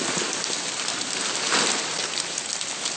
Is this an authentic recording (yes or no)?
yes